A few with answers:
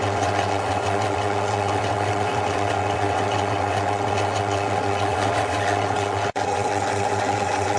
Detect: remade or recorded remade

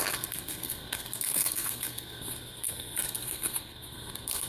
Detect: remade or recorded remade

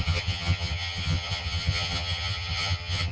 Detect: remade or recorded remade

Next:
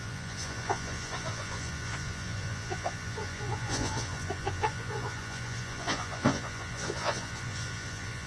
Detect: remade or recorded remade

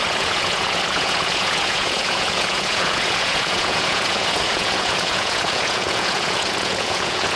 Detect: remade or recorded remade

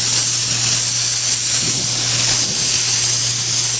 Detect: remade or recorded recorded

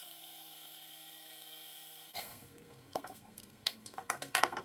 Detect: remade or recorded remade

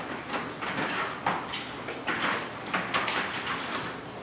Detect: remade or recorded recorded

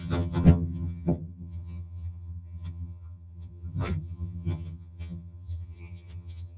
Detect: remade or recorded remade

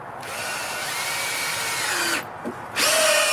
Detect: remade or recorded recorded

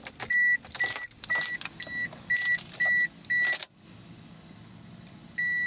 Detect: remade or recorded recorded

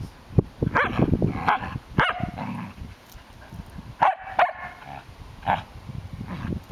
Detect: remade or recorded recorded